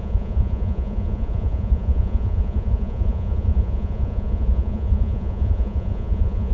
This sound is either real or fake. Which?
fake